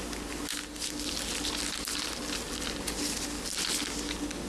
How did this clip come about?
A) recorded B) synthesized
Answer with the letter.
A